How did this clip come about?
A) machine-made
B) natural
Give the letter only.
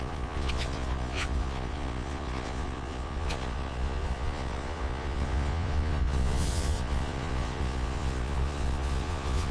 A